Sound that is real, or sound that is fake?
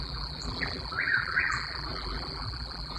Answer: fake